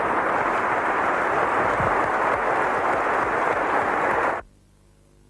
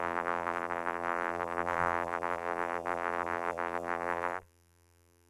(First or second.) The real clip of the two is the first